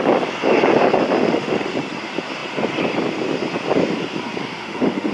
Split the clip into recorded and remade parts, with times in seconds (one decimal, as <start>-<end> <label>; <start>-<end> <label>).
0.0-1.2 recorded; 1.2-1.7 remade; 1.7-4.4 recorded; 4.4-5.1 remade